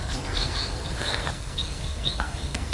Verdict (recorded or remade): remade